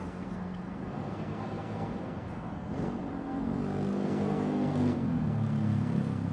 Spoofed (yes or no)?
yes